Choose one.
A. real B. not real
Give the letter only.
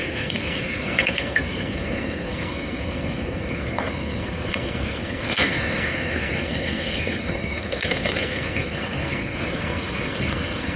B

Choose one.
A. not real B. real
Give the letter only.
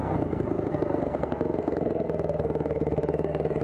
A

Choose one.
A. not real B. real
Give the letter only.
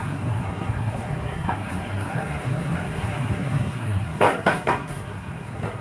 A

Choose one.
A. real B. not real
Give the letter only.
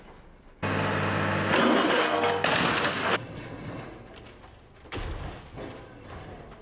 A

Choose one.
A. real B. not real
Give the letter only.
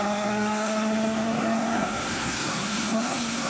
B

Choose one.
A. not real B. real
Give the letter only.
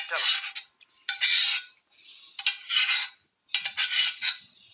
B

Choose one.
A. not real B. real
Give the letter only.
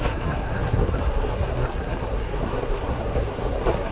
A